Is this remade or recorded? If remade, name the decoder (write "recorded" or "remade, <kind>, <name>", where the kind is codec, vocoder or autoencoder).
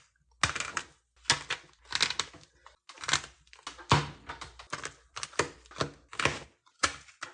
recorded